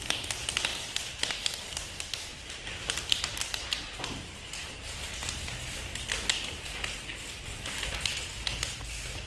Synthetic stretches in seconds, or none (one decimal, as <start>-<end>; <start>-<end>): 0.7-1.3; 2.3-4.0